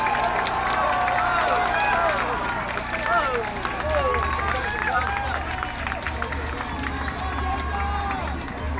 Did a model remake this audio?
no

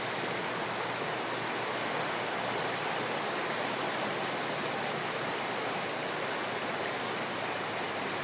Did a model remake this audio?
no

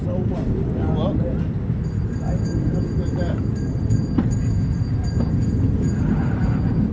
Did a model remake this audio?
yes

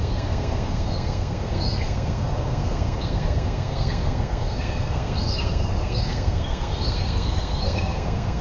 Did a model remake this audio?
yes